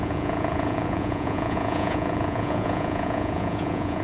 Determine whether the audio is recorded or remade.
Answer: remade